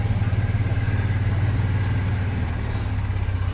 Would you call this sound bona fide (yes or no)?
yes